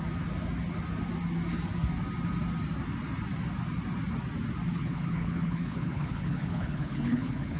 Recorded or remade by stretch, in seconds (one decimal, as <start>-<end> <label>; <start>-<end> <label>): 0.0-4.7 recorded; 4.7-7.6 remade